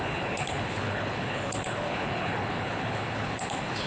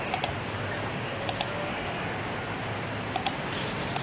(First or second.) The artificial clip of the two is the first